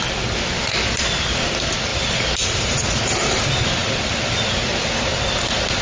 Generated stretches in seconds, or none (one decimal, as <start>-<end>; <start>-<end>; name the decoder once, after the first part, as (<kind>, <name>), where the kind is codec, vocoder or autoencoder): none